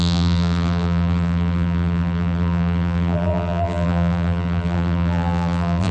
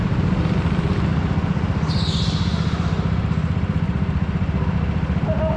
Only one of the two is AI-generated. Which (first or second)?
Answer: first